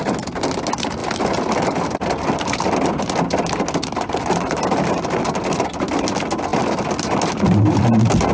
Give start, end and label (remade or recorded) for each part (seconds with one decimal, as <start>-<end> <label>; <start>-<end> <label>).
0.0-1.0 recorded; 1.0-3.0 remade; 3.0-6.5 recorded; 6.5-7.2 remade; 7.2-8.3 recorded